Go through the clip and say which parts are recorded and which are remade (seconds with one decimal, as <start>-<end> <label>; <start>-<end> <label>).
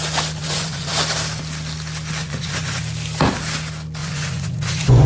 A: 0.0-0.4 recorded; 0.4-0.9 remade; 0.9-2.2 recorded; 2.2-2.8 remade; 2.8-4.0 recorded; 4.0-5.1 remade